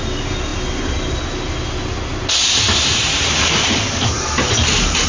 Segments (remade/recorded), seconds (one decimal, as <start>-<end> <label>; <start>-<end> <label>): 0.0-5.1 recorded